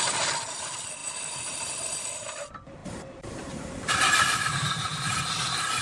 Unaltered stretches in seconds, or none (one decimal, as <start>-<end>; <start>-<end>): 0.0-2.8; 5.2-5.8